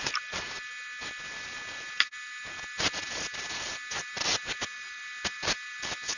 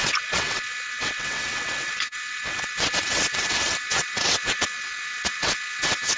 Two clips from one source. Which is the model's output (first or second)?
second